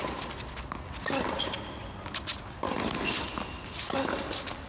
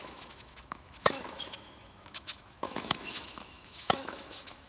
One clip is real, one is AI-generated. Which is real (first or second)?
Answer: first